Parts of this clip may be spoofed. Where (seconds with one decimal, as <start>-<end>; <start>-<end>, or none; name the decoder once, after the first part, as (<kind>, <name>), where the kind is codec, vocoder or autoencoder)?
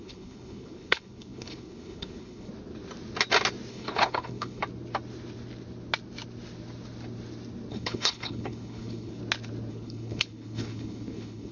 0.0-2.5 (codec, HILCodec); 3.7-4.6; 7.7-9.2; 9.7-11.5